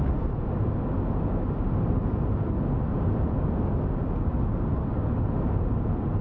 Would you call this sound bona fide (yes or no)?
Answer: yes